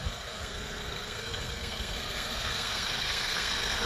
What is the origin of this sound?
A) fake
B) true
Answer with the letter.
A